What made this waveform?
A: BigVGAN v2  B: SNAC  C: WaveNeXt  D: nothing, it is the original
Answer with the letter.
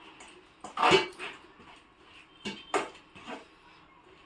D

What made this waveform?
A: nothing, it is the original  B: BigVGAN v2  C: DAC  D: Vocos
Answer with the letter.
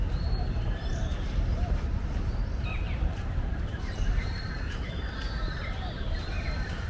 B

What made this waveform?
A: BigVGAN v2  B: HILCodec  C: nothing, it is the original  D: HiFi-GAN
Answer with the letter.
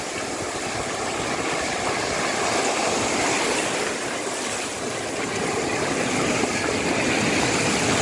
C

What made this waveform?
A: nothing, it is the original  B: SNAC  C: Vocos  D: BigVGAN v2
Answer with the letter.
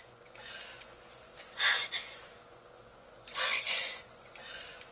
C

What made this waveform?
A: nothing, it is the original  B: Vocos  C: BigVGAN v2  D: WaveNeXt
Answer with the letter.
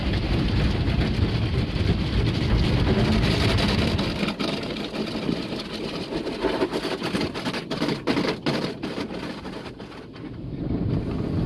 A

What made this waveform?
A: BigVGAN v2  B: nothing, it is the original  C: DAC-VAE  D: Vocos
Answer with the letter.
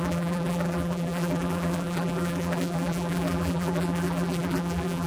A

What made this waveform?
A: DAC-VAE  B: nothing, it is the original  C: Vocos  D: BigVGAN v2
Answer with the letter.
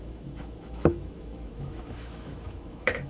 A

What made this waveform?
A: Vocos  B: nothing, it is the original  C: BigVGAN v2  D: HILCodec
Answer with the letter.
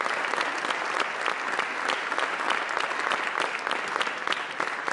B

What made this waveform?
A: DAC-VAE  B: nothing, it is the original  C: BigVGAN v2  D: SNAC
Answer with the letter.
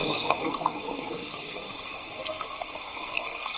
D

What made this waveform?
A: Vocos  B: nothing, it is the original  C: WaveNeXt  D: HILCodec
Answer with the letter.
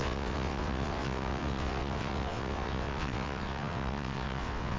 C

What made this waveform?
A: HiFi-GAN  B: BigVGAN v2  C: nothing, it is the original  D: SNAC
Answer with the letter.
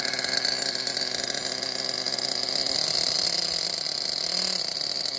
C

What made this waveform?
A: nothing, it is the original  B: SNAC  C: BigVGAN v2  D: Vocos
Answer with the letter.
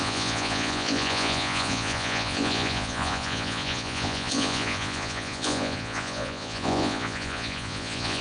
D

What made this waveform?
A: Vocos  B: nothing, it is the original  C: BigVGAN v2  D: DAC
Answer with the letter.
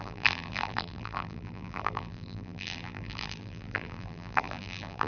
C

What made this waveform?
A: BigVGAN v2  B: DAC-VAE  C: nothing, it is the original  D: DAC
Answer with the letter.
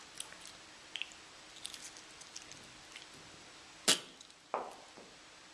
C